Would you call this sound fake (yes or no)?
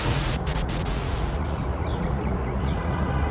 yes